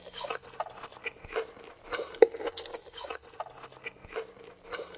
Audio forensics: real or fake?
real